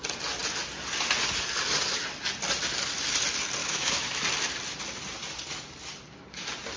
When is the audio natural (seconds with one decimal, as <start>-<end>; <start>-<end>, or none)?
0.0-3.6; 4.2-6.8